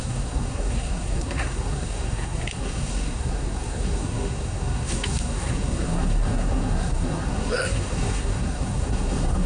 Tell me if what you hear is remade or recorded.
remade